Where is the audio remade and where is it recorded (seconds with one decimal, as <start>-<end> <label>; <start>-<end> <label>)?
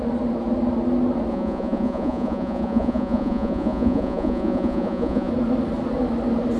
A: 0.0-1.3 recorded; 1.3-5.3 remade; 5.3-6.6 recorded